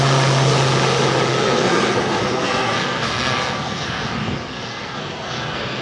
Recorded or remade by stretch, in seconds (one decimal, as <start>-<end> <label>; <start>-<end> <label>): 0.0-1.3 recorded; 1.3-4.1 remade; 4.1-4.5 recorded; 4.5-5.8 remade